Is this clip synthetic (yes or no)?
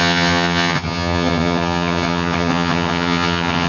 yes